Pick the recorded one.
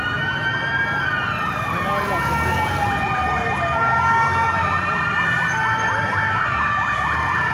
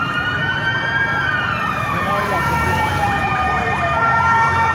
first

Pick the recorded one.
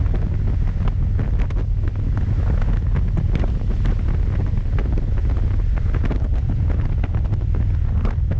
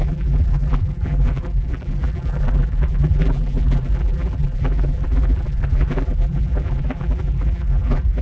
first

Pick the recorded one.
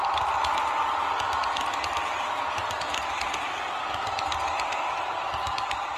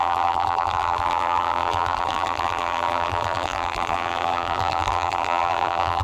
first